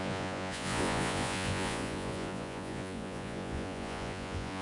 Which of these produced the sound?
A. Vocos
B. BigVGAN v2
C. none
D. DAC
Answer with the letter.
A